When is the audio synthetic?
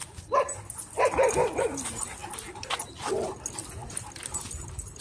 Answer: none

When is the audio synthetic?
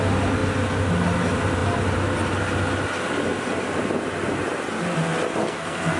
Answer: 5.4-6.0 (codec, SNAC)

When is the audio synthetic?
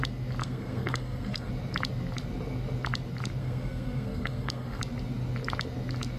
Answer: 0.4-1.5 (codec, SNAC); 3.4-4.8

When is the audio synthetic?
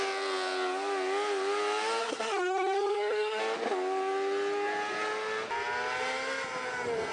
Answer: 2.0-3.4 (codec, SNAC)